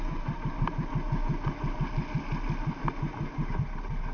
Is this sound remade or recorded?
recorded